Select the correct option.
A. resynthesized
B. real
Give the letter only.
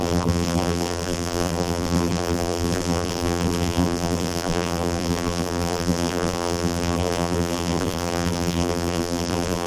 A